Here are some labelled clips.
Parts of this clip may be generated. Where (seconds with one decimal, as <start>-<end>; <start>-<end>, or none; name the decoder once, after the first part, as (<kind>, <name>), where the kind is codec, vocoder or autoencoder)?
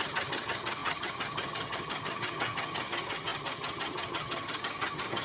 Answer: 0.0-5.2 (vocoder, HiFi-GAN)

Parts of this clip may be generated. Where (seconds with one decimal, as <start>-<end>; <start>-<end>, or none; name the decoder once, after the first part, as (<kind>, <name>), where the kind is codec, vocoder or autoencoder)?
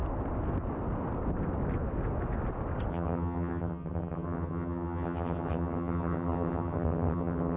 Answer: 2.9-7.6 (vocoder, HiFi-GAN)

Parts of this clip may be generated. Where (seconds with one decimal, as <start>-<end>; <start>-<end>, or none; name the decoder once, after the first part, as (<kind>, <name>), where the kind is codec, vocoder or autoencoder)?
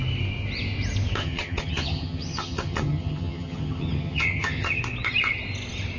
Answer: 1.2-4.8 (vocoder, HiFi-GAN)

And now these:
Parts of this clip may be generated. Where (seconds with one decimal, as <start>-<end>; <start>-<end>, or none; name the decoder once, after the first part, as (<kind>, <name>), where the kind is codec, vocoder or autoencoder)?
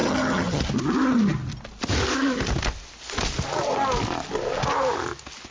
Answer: 0.0-0.6 (vocoder, HiFi-GAN)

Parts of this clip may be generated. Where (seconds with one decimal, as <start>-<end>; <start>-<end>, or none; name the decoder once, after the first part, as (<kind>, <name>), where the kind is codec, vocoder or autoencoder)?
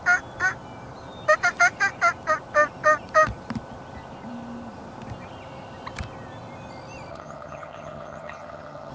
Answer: 7.1-8.9 (vocoder, HiFi-GAN)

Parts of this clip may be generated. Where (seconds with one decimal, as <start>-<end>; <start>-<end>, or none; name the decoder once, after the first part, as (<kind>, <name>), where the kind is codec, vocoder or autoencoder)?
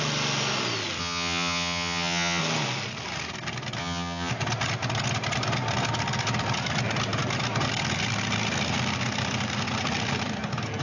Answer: 1.0-2.4 (vocoder, HiFi-GAN); 3.8-4.3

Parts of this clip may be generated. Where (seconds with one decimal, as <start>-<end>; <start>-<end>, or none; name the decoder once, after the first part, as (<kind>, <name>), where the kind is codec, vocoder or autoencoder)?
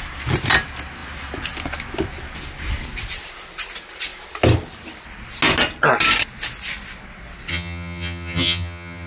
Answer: 7.5-9.1 (vocoder, HiFi-GAN)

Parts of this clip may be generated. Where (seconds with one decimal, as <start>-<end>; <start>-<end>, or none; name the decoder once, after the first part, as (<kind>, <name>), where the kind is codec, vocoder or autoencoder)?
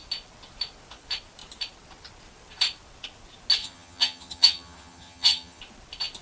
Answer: 3.6-5.6 (vocoder, HiFi-GAN)